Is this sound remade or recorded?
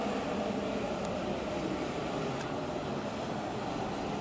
recorded